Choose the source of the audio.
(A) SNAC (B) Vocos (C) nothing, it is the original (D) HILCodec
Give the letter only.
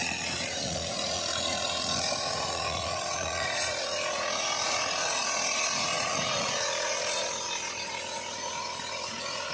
B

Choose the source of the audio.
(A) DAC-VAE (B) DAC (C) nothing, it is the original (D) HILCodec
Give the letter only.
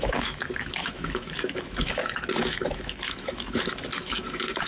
A